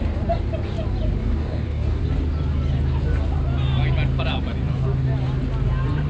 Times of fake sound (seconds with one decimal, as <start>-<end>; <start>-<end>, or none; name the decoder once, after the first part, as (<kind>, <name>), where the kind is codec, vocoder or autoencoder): 1.2-2.0 (codec, DAC)